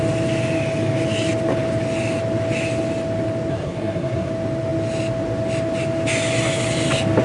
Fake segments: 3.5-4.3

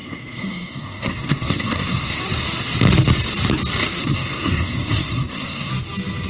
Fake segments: 0.0-2.2; 4.0-5.7

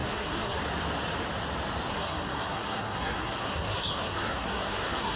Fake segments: 0.0-0.6; 1.9-5.2

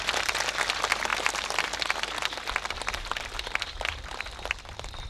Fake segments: none

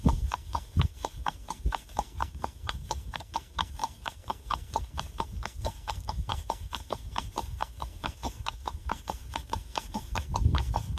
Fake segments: 0.0-11.0

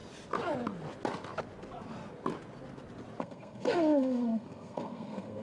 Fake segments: 3.2-5.4